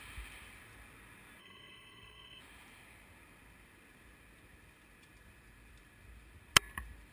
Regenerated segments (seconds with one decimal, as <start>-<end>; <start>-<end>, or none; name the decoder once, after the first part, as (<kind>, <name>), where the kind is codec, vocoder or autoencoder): 1.4-2.4 (codec, SNAC)